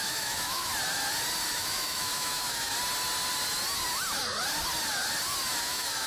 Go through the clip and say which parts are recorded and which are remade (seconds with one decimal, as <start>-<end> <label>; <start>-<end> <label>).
0.0-0.7 remade; 0.7-1.5 recorded; 1.5-2.7 remade; 2.7-5.6 recorded; 5.6-6.1 remade